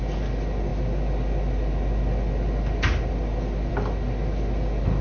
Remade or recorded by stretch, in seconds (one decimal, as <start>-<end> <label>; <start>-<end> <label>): 0.0-5.0 recorded